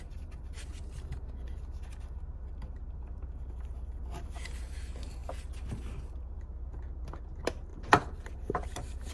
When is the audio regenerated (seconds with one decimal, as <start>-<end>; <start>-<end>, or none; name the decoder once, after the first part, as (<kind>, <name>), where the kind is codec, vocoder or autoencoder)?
0.7-1.5 (vocoder, BigVGAN v2); 7.7-9.1